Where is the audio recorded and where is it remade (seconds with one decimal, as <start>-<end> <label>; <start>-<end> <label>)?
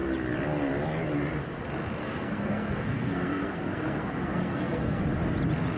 0.0-2.0 recorded; 2.0-5.0 remade; 5.0-5.8 recorded